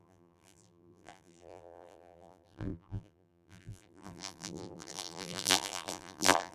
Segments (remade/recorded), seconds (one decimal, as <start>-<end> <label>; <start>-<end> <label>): 0.0-6.5 remade